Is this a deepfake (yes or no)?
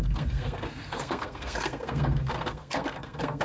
yes